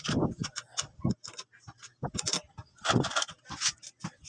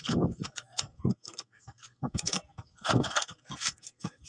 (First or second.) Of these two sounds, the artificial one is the second